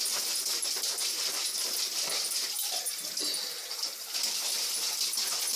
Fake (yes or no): no